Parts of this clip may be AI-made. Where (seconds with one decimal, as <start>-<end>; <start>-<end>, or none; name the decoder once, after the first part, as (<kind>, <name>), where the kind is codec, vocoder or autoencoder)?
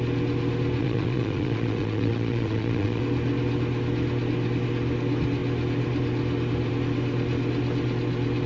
0.8-3.0 (vocoder, Vocos)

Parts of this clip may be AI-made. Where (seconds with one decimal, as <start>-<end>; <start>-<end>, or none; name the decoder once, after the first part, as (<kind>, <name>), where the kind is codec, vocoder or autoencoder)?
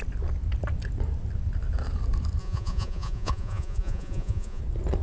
2.4-4.6 (vocoder, Vocos)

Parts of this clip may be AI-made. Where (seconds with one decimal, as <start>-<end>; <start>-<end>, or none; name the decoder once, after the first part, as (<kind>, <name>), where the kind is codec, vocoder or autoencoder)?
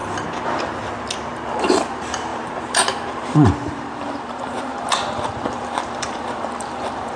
1.5-7.2 (vocoder, BigVGAN v2)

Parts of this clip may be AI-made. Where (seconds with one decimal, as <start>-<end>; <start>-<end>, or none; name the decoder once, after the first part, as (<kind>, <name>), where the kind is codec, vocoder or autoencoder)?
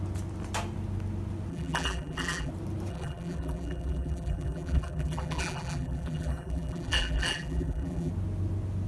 1.5-2.5 (vocoder, BigVGAN v2); 2.9-8.1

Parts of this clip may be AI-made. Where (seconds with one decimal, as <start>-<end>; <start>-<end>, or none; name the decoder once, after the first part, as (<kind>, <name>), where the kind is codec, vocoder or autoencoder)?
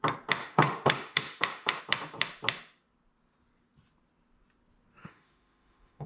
0.4-1.8 (autoencoder, DAC-VAE); 5.0-6.1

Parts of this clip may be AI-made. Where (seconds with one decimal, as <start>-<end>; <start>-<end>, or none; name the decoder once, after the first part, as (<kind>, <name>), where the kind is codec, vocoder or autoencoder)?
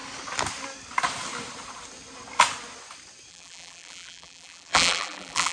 3.3-5.5 (vocoder, BigVGAN v2)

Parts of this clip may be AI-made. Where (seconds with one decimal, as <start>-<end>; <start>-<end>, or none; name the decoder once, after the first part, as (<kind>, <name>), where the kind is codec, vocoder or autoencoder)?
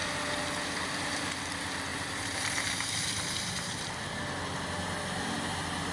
1.9-4.2 (vocoder, BigVGAN v2)